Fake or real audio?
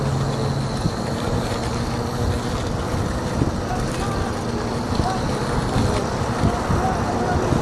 real